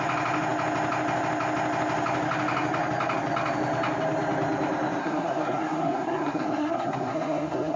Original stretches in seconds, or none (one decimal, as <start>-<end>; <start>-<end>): 0.0-5.0